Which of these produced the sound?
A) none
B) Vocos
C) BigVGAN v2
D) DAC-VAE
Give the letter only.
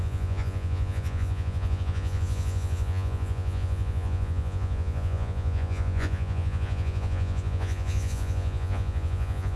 B